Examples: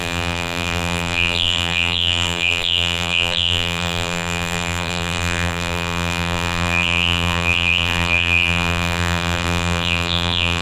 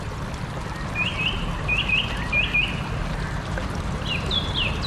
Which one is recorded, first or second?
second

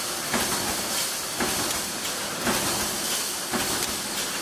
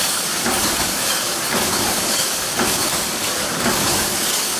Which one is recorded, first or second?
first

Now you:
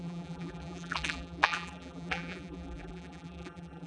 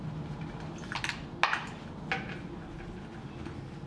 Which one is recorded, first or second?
second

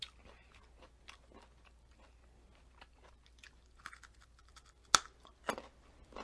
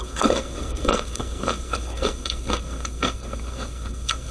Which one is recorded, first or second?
first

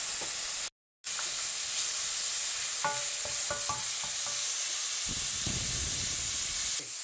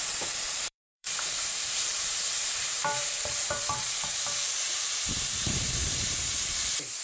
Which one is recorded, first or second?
first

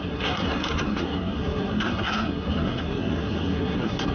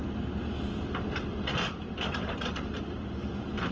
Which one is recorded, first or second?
second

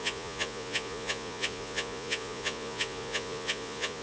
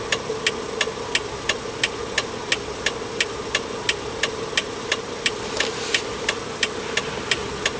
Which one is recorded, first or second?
second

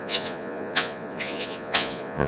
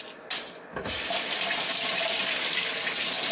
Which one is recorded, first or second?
second